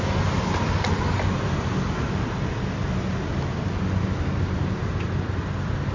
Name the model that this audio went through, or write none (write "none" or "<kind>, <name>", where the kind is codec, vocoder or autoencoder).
none